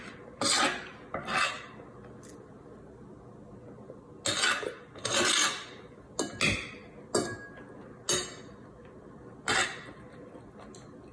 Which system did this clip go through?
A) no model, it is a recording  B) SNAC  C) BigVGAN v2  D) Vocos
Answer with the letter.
A